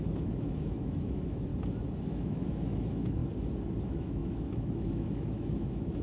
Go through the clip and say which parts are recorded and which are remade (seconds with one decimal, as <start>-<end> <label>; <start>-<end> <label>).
0.0-1.5 remade; 1.5-2.0 recorded; 2.0-3.2 remade; 3.2-3.8 recorded; 3.8-6.0 remade